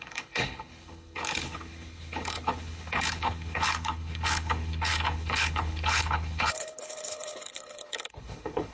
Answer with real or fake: fake